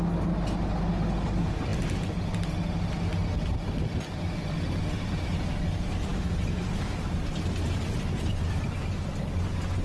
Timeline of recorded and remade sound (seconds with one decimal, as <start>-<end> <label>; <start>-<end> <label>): 0.0-9.8 recorded